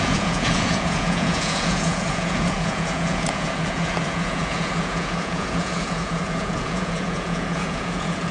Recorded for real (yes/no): no